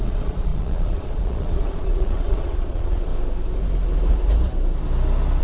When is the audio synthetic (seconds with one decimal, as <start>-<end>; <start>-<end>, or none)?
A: 0.0-3.1